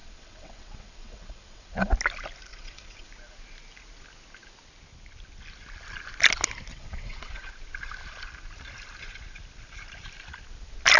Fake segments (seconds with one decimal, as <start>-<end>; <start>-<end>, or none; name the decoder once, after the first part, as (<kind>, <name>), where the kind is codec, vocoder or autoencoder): 0.0-1.9 (vocoder, WaveNeXt); 2.5-3.1; 6.7-7.5